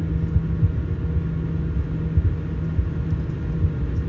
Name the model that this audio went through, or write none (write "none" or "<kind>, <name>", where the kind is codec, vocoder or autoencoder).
none